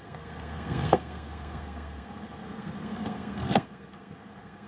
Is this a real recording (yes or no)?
no